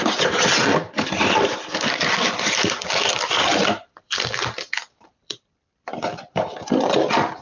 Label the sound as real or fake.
fake